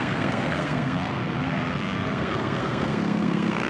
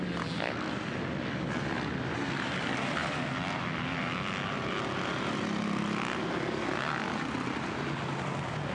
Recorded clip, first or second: second